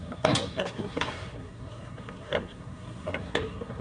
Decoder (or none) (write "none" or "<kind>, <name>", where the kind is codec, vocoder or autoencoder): codec, SNAC